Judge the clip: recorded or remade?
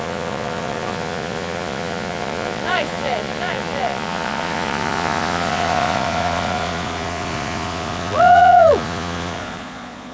remade